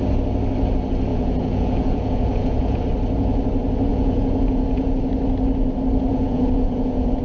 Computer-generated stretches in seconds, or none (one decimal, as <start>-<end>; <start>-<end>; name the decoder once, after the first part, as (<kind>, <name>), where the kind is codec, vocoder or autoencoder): 1.1-2.8 (vocoder, Vocos); 3.9-5.0; 6.1-7.2